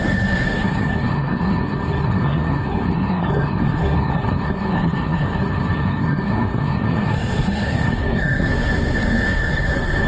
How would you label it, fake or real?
fake